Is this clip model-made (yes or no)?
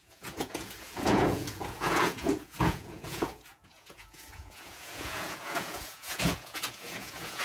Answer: yes